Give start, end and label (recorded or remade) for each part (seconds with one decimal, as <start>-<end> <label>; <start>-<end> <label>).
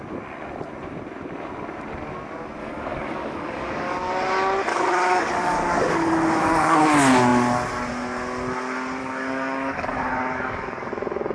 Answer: 0.0-2.6 recorded; 2.6-4.1 remade; 4.1-4.7 recorded; 4.7-6.8 remade; 6.8-9.0 recorded; 9.0-10.9 remade; 10.9-11.3 recorded